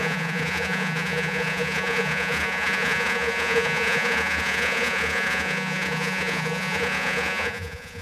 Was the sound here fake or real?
fake